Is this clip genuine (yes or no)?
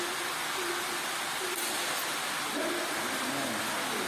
yes